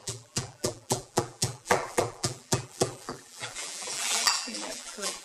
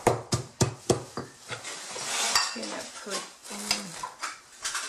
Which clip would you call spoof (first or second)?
first